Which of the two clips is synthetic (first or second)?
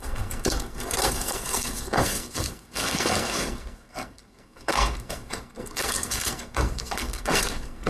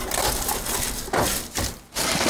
first